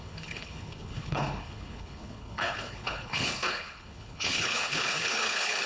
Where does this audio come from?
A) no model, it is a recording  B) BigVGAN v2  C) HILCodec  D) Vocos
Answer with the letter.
C